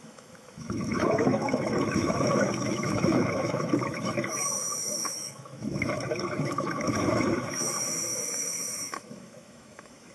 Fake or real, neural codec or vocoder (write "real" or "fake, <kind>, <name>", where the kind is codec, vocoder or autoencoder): fake, autoencoder, DAC-VAE